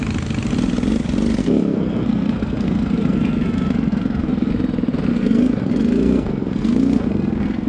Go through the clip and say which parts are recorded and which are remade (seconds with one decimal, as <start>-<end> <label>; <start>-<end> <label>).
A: 0.0-1.4 recorded; 1.4-4.5 remade; 4.5-5.1 recorded; 5.1-7.7 remade